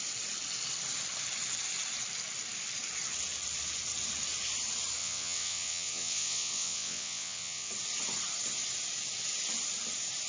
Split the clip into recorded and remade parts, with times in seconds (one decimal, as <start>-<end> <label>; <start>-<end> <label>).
0.0-5.0 recorded; 5.0-7.7 remade; 7.7-10.3 recorded